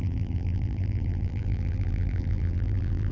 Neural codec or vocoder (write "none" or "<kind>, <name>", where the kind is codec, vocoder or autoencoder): vocoder, BigVGAN v2